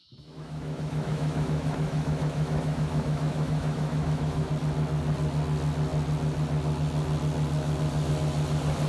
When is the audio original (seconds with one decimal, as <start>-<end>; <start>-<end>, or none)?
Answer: 4.5-8.9